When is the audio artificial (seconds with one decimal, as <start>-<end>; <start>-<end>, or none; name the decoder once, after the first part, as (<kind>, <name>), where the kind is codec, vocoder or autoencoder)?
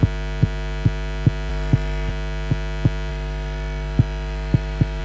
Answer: 1.5-2.1 (autoencoder, DAC-VAE); 3.1-5.0